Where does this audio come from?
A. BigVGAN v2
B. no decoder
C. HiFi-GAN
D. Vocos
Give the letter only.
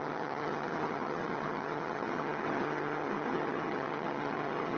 C